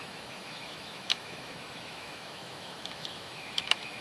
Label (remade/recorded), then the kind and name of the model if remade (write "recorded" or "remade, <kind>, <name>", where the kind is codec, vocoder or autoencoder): remade, autoencoder, DAC-VAE